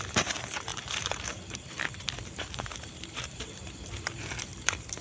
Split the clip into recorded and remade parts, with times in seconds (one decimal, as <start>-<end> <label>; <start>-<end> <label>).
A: 0.0-0.7 recorded; 0.7-3.7 remade; 3.7-4.5 recorded; 4.5-5.0 remade